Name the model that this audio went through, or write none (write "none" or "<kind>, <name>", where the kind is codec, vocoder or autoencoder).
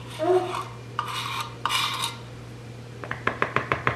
vocoder, BigVGAN v2